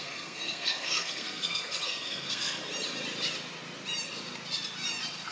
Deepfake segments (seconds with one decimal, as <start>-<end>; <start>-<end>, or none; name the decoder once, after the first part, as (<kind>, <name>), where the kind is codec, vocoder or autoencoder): 0.0-2.6 (codec, SNAC)